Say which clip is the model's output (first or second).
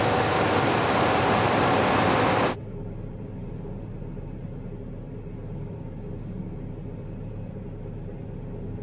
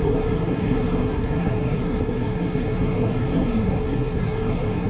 second